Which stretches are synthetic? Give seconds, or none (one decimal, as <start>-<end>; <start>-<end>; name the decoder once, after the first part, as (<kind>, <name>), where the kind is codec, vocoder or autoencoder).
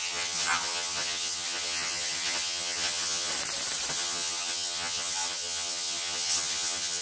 0.0-3.3 (vocoder, HiFi-GAN); 3.9-7.0